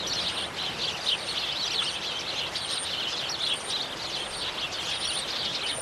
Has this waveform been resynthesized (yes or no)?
no